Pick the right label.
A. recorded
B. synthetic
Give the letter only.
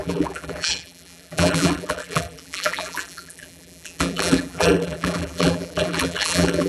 B